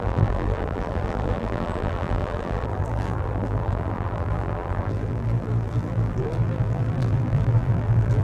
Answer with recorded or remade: remade